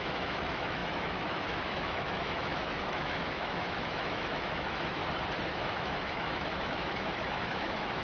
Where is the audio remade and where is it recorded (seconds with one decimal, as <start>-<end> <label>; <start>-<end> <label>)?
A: 0.0-5.0 remade; 5.0-5.5 recorded; 5.5-8.0 remade